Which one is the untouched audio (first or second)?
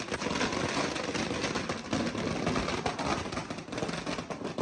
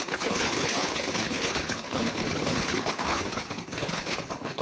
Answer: first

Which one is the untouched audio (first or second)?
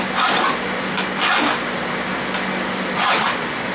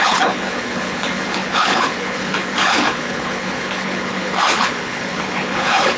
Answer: first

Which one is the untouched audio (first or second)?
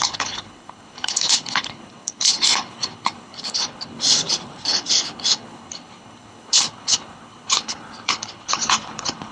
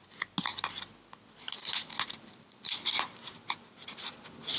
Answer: second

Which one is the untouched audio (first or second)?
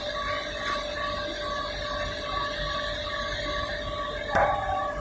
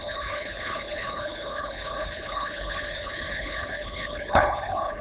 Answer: first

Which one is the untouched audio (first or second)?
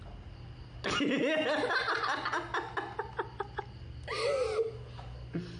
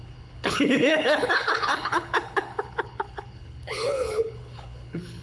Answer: first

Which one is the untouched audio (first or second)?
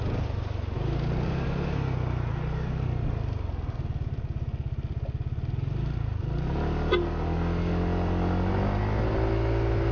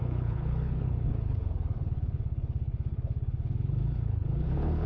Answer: first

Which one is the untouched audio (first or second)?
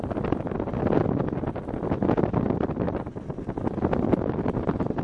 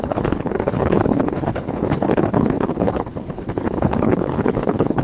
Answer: first